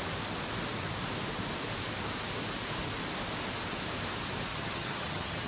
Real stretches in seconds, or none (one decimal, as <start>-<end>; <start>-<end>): 0.0-4.5